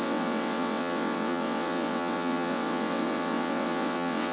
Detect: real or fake fake